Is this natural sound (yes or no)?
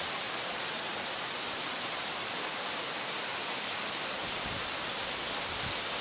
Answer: no